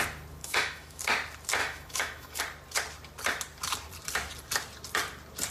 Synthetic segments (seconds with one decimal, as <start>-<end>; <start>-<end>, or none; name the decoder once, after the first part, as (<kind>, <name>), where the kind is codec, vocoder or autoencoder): 0.4-1.0 (autoencoder, DAC-VAE); 1.6-2.4